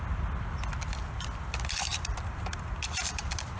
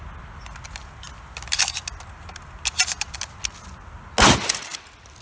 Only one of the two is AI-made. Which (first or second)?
first